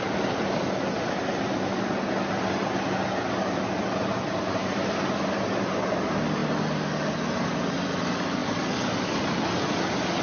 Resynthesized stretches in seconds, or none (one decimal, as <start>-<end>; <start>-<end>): none